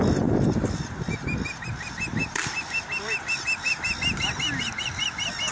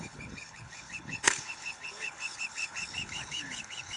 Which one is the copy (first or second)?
second